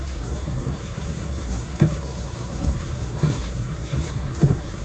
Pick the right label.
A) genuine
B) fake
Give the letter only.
B